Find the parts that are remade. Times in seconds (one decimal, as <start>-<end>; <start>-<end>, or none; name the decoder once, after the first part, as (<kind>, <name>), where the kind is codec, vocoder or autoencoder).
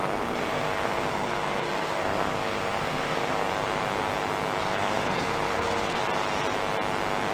0.0-3.5 (codec, SNAC); 4.6-6.0